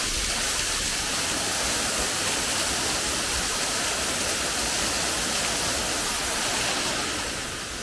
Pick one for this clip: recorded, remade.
recorded